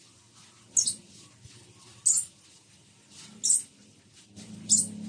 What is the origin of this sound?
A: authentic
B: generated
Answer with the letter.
A